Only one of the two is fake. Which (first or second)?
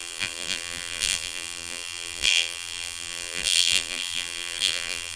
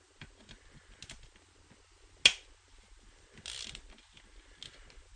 first